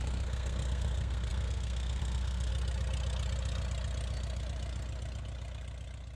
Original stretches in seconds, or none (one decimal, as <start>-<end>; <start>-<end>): 2.5-6.2